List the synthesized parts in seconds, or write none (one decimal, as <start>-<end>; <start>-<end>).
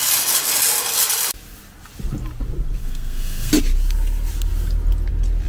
2.8-3.5